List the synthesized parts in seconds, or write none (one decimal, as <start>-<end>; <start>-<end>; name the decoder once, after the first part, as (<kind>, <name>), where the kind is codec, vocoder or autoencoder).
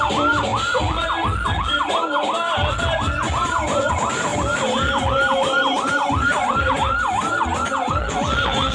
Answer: none